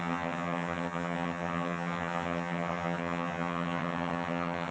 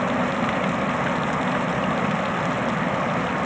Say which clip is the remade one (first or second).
first